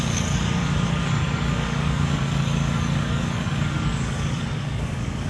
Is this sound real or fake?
fake